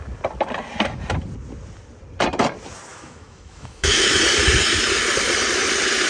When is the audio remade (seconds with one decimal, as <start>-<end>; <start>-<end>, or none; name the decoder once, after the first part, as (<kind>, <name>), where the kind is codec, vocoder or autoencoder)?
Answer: 2.9-4.2 (autoencoder, DAC-VAE)